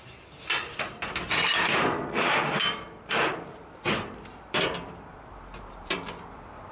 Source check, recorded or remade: remade